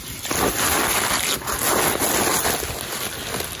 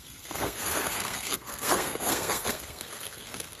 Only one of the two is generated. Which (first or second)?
second